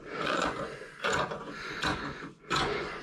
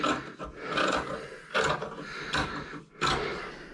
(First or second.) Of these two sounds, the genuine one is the second